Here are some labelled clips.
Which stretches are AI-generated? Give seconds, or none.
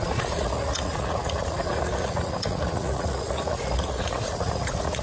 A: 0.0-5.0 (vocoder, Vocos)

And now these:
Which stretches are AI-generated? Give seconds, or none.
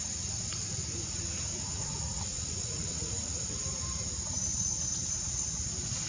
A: 1.5-3.4 (vocoder, Vocos)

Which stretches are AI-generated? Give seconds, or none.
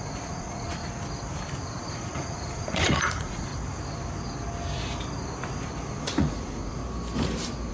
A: 0.0-0.8 (vocoder, Vocos); 1.8-3.5; 5.8-6.8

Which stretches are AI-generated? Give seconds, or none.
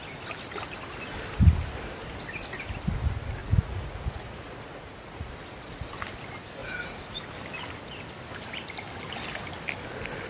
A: 3.4-5.3 (vocoder, Vocos); 6.6-7.2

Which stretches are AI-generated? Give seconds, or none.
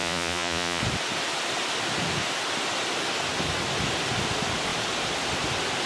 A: 0.0-0.8 (vocoder, Vocos)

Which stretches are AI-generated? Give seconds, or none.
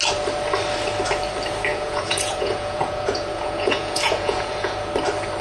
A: 1.7-4.9 (vocoder, Vocos)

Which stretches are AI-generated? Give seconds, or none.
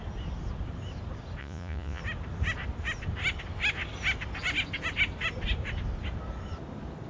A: 1.4-2.0 (vocoder, Vocos)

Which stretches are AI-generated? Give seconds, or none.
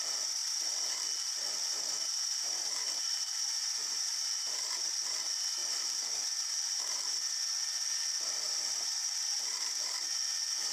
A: none